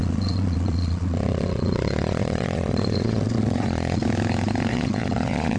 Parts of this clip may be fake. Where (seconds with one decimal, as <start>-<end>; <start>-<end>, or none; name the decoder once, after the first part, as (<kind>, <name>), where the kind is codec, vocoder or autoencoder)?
0.0-4.0 (vocoder, Vocos); 4.7-5.6